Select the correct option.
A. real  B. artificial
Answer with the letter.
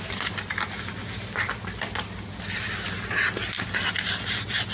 A